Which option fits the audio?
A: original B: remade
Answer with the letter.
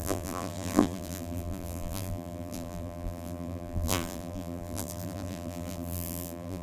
B